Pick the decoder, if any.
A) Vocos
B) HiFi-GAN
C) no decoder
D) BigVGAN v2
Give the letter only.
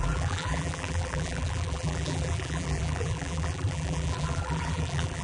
D